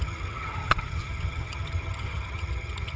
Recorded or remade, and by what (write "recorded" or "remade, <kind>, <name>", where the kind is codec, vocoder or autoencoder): remade, vocoder, HiFi-GAN